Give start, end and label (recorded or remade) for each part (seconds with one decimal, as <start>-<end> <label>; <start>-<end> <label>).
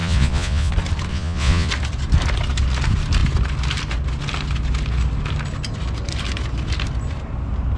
0.0-0.7 remade; 0.7-1.1 recorded; 1.1-1.7 remade; 1.7-7.8 recorded